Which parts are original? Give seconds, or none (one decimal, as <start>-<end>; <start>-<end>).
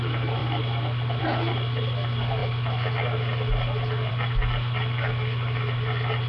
0.0-6.3